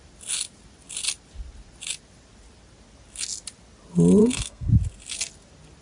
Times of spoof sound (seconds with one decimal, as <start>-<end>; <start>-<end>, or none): 4.2-4.7